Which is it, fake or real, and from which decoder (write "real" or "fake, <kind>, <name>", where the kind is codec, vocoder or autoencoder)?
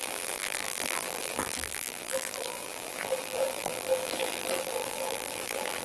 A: fake, vocoder, BigVGAN v2